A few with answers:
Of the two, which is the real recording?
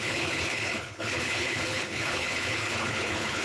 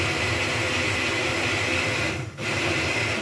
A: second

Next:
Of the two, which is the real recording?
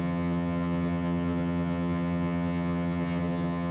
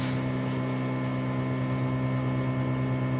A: second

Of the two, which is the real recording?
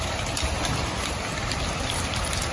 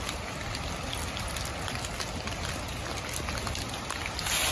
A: second